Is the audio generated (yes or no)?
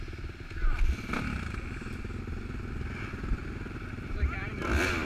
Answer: no